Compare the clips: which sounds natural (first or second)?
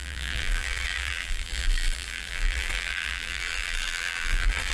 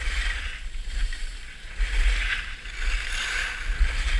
second